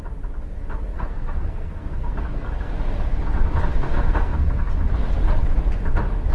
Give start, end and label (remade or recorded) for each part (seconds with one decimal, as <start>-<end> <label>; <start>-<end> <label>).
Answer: 0.0-0.9 recorded; 0.9-2.7 remade; 2.7-3.8 recorded; 3.8-4.7 remade; 4.7-6.3 recorded